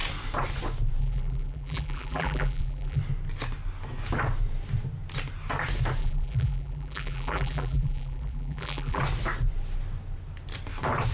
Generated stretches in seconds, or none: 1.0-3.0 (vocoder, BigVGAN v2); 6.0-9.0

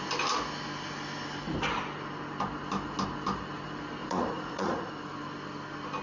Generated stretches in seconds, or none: 4.0-4.9 (vocoder, Vocos)

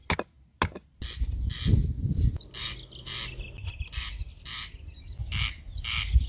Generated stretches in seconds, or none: 5.2-6.3 (vocoder, BigVGAN v2)

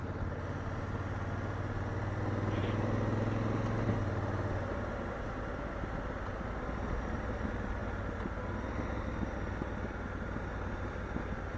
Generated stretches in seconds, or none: none